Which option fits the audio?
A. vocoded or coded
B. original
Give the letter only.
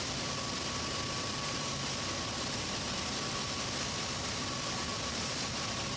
A